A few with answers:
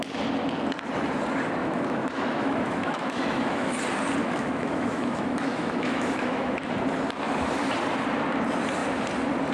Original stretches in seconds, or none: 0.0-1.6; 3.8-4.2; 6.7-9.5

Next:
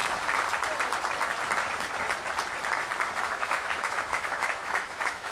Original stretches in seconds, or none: 0.0-3.2

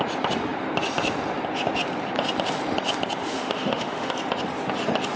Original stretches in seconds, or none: 0.0-3.2; 4.1-5.2

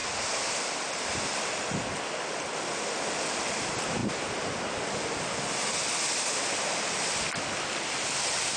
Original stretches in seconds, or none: 0.0-8.6

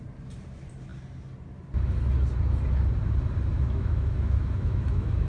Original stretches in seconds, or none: 0.0-3.5

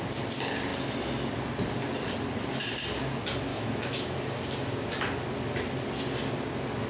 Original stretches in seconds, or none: 0.0-3.5; 4.2-6.9